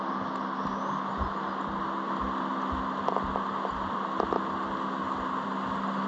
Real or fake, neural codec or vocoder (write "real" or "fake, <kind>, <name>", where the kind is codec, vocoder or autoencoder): real